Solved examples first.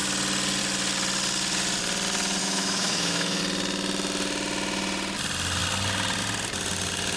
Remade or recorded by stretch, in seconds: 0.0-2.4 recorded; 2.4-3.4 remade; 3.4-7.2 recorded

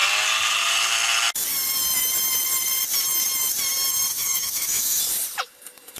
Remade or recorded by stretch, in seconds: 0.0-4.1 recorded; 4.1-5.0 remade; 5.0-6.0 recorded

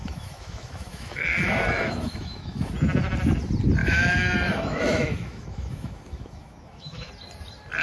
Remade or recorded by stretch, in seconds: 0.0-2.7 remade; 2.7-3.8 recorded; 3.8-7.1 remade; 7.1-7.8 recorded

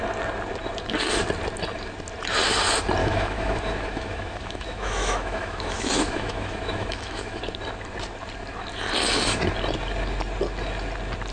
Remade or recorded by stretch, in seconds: 0.0-3.0 recorded; 3.0-7.4 remade; 7.4-11.3 recorded

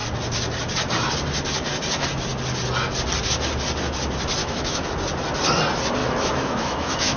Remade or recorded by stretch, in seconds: 0.0-4.4 recorded; 4.4-4.9 remade; 4.9-6.0 recorded; 6.0-7.2 remade

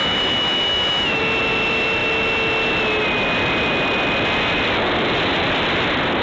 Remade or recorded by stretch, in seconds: 0.0-1.2 remade; 1.2-6.2 recorded